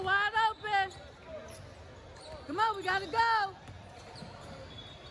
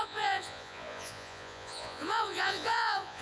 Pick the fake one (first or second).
second